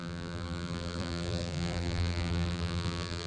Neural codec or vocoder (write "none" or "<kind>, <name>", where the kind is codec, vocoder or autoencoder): vocoder, BigVGAN v2